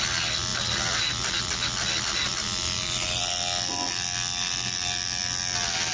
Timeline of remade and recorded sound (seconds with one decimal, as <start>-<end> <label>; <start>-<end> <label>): 0.0-5.9 recorded